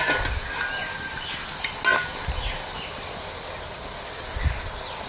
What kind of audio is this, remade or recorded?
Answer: recorded